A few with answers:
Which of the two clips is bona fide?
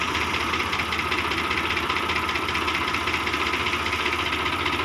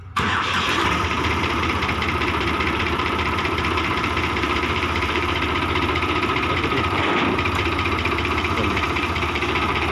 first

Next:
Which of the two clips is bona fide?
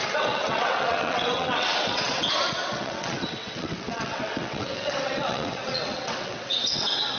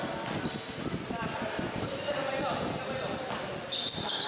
second